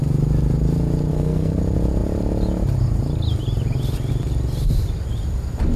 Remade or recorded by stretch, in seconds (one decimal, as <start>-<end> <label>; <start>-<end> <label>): 0.0-1.1 recorded; 1.1-1.6 remade; 1.6-5.8 recorded